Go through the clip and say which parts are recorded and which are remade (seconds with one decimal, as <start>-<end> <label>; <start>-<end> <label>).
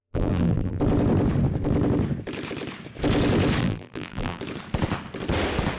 0.0-0.8 remade; 0.8-3.6 recorded; 3.6-4.4 remade; 4.4-5.8 recorded